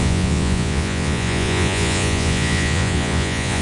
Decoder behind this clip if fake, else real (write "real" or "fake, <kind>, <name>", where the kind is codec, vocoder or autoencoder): fake, vocoder, Vocos